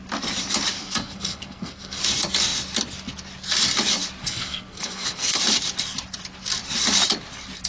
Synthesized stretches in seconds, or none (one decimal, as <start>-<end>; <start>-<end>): 0.8-2.0; 4.2-5.4

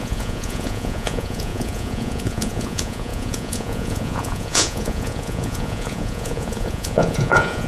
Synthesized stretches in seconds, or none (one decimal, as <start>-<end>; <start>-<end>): 0.0-7.7

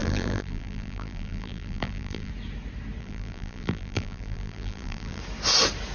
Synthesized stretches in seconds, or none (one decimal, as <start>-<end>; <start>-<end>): 0.0-2.3; 3.0-5.2

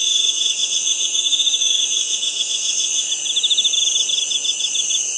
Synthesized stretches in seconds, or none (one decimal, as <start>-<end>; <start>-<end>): 0.0-3.1

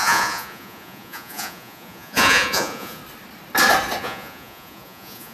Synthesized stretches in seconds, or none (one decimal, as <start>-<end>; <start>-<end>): 0.0-3.0; 4.0-5.3

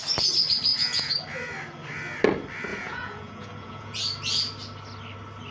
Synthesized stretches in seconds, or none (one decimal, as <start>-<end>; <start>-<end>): 0.7-1.2; 2.7-4.0

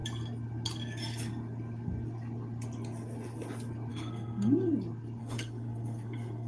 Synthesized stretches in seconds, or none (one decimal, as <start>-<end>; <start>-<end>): 3.9-4.7; 5.2-6.5

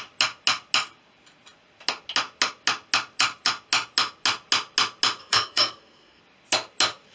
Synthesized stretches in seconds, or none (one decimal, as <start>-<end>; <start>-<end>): 5.2-6.2